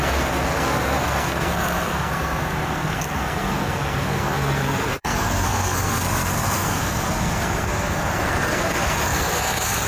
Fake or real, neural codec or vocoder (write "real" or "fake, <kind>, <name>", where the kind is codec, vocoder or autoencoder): fake, codec, SNAC